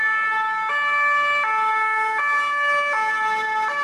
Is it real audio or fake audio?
real